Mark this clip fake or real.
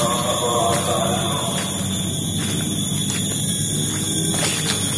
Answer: real